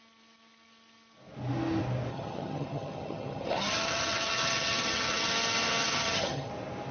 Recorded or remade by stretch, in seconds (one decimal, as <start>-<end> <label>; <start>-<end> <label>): 0.0-2.1 recorded; 2.1-5.3 remade; 5.3-5.9 recorded; 5.9-6.5 remade; 6.5-6.9 recorded